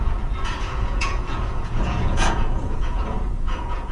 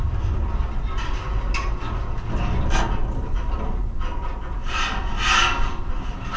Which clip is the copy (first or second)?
first